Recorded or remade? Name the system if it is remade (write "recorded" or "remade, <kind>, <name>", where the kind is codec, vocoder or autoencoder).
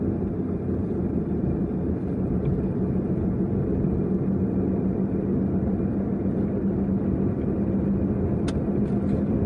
recorded